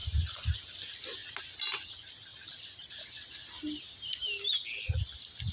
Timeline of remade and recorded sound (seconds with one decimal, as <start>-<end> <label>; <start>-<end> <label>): 0.0-5.5 recorded